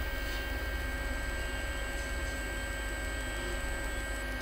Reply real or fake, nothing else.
real